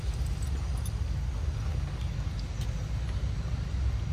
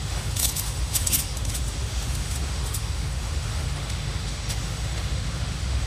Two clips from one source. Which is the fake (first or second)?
second